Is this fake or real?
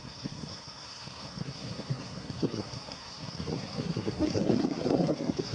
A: fake